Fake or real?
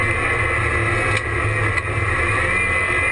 real